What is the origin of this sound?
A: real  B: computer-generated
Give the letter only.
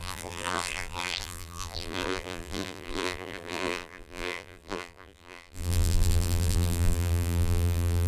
B